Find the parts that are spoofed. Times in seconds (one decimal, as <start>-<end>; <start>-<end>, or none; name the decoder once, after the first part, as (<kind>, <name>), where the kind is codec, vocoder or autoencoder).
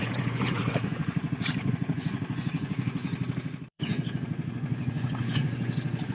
0.0-3.0 (vocoder, Vocos); 3.7-6.1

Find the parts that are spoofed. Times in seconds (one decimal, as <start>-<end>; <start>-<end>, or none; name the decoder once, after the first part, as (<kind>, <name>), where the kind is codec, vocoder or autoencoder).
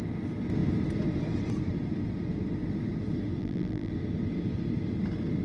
3.4-3.9 (vocoder, BigVGAN v2)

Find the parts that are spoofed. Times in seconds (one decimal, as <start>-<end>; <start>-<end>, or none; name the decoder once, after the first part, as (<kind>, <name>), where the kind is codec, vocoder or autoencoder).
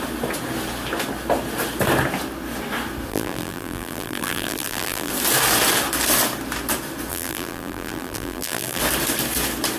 3.1-5.1 (vocoder, BigVGAN v2); 7.1-8.8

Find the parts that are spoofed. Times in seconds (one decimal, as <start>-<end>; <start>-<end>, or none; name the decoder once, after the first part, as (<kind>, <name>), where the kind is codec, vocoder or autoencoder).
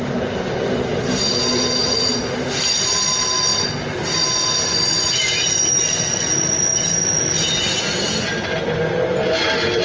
none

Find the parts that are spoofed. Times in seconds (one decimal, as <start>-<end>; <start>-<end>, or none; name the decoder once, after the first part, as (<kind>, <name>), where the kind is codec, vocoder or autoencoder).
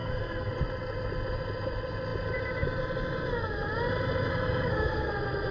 0.0-0.5 (codec, SNAC); 4.3-5.1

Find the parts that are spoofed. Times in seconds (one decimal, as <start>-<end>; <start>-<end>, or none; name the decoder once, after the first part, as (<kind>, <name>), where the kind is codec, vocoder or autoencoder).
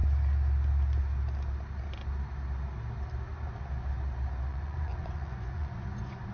4.5-6.3 (vocoder, Vocos)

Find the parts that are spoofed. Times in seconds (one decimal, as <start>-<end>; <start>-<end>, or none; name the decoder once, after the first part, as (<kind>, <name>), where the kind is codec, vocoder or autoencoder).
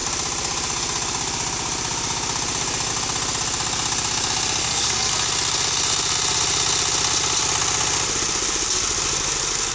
4.6-5.1 (codec, SNAC)